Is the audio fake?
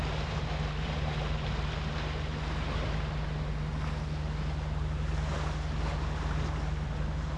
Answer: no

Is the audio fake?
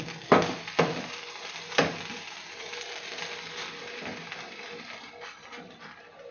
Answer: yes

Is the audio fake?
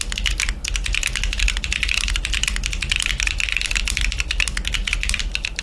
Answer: no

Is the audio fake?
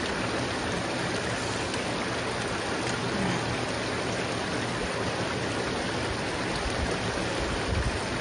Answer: no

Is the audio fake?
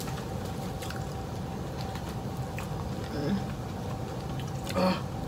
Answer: no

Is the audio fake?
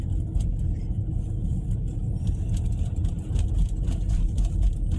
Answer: no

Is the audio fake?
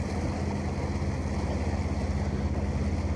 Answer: no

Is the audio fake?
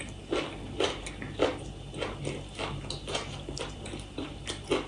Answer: no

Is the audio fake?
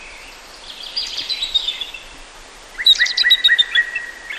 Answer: yes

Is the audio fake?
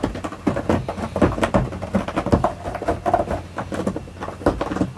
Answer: no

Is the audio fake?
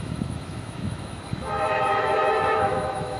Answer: yes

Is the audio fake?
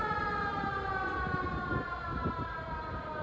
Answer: no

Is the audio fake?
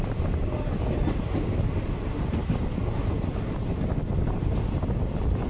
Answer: no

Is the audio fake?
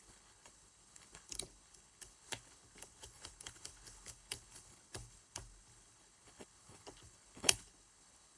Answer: yes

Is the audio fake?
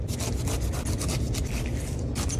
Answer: no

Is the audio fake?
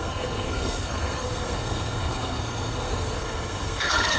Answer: yes